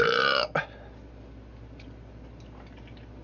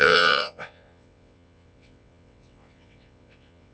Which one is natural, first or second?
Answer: first